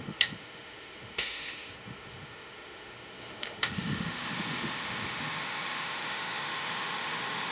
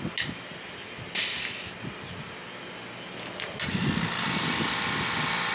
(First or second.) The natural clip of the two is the second